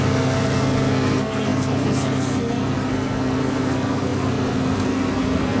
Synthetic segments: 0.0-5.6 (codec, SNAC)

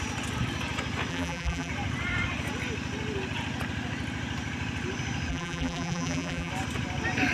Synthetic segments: 1.1-1.7 (vocoder, BigVGAN v2); 5.3-6.5

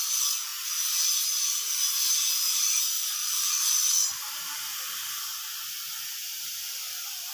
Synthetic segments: 0.0-0.5 (vocoder, BigVGAN v2); 2.3-3.8; 6.4-7.3

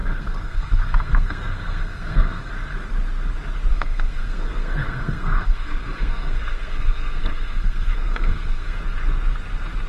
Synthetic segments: 0.0-2.5 (codec, SNAC); 3.7-8.8

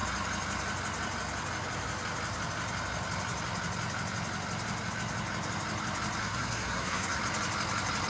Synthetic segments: 6.2-7.2 (codec, SNAC)